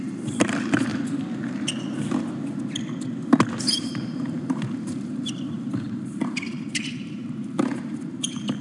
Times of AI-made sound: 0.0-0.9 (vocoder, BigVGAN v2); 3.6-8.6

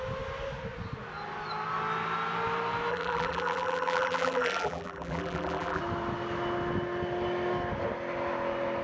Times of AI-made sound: 2.9-5.8 (vocoder, BigVGAN v2)

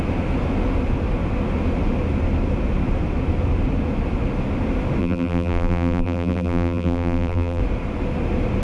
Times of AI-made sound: 5.0-7.6 (vocoder, BigVGAN v2)

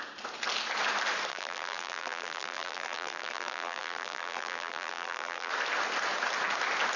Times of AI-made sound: 1.3-5.5 (vocoder, BigVGAN v2)

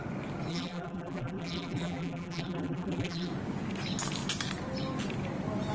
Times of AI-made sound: 0.5-3.3 (vocoder, BigVGAN v2)